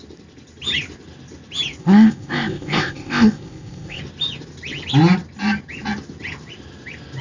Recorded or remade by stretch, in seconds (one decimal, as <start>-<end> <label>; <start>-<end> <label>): 0.0-1.8 recorded; 1.8-4.0 remade; 4.0-7.2 recorded